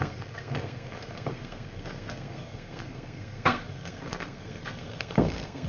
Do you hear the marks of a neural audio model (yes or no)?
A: yes